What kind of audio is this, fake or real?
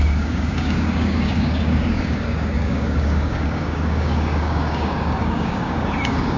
fake